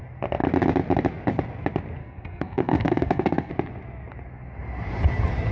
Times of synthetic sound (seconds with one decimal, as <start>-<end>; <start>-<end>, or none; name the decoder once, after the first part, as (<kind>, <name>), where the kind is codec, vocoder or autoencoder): 2.0-3.5 (codec, SNAC)